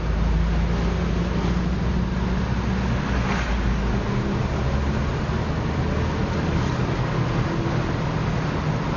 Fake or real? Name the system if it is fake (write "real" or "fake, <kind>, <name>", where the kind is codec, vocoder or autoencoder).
real